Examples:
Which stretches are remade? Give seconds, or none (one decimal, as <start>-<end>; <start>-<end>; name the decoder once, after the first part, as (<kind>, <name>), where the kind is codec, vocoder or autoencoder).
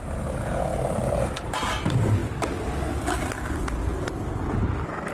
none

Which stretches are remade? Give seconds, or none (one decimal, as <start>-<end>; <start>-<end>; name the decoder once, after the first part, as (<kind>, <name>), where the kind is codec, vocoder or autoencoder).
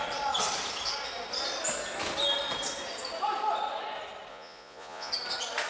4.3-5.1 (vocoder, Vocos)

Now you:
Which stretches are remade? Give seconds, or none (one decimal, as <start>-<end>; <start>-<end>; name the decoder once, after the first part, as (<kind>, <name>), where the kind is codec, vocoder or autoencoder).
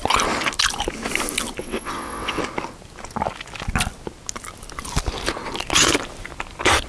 1.6-2.4 (vocoder, WaveNeXt)